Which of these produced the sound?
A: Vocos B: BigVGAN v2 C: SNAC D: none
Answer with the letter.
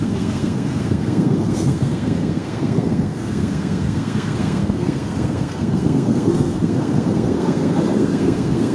C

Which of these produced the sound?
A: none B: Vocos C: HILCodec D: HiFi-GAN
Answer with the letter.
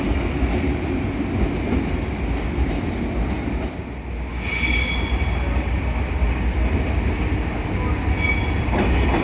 A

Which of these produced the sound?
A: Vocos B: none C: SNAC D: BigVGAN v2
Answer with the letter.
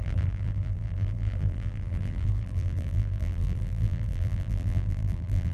D